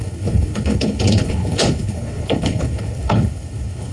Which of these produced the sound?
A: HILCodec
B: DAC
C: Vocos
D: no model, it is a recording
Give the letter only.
A